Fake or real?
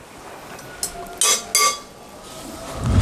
real